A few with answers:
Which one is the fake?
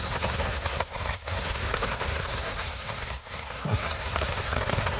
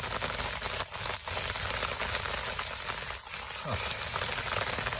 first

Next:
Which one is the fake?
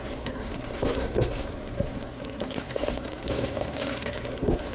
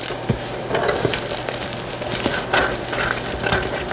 first